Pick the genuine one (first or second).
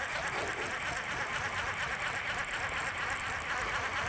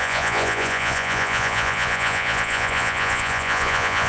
first